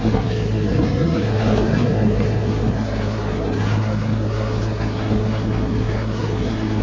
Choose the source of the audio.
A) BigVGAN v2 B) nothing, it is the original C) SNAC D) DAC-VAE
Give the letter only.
C